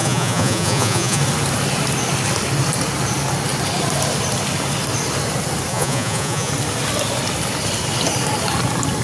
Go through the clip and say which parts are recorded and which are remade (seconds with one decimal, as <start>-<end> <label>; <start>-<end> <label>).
0.0-1.2 remade; 1.2-5.7 recorded; 5.7-6.5 remade; 6.5-9.0 recorded